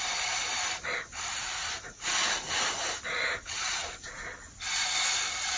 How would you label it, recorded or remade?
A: recorded